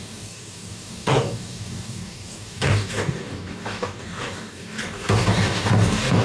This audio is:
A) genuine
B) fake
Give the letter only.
B